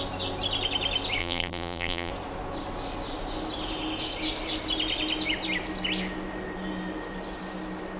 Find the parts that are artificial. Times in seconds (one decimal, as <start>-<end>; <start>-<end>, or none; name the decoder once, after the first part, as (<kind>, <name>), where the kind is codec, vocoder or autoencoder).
1.2-2.1 (vocoder, BigVGAN v2)